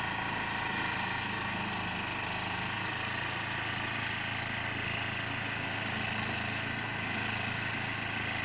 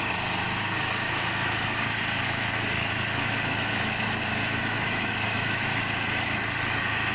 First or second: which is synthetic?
second